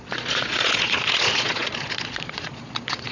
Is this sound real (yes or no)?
no